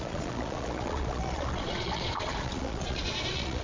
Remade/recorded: remade